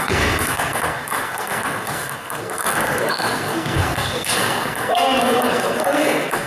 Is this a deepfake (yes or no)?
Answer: yes